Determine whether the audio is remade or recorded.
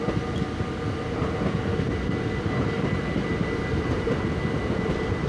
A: recorded